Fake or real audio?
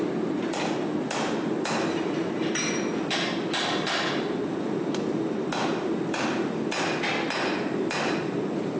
real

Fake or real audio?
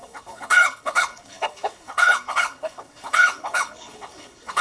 fake